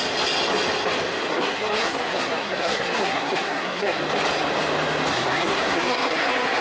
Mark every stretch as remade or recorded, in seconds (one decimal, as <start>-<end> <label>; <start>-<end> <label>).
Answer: 0.0-1.3 recorded; 1.3-4.0 remade; 4.0-5.1 recorded; 5.1-6.6 remade